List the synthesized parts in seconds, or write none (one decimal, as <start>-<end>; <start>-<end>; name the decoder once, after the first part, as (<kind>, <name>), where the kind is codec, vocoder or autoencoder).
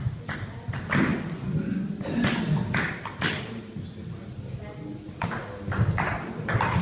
none